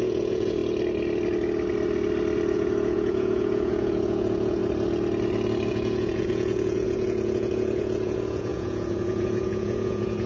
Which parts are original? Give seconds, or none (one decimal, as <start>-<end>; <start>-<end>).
0.6-2.5; 4.6-5.7